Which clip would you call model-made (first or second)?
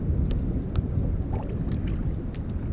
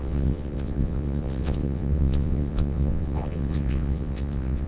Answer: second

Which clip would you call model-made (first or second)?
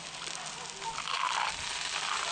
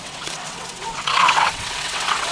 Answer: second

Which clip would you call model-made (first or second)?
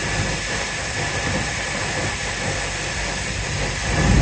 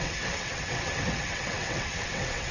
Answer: second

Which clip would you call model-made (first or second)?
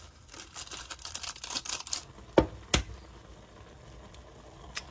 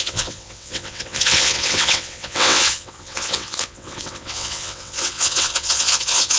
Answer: second